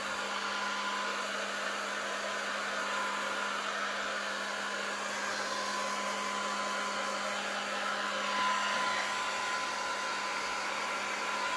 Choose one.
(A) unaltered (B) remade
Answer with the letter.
A